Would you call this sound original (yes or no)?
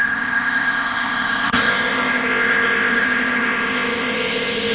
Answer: no